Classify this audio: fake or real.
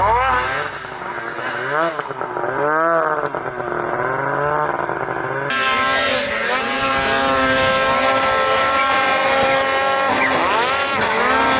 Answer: real